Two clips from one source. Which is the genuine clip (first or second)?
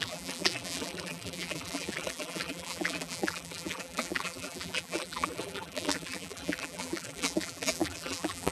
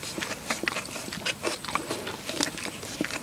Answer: second